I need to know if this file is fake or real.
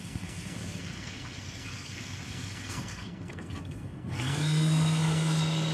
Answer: fake